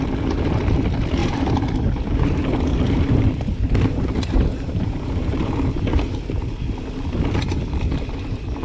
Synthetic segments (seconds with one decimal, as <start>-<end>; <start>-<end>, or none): 1.2-5.5